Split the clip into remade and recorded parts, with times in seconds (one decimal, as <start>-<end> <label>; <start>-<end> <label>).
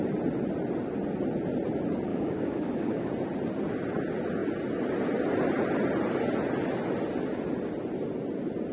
0.0-2.1 recorded; 2.1-3.1 remade; 3.1-8.7 recorded